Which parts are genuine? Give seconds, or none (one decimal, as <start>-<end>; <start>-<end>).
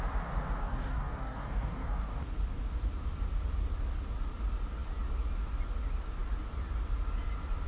0.0-0.6; 2.2-7.7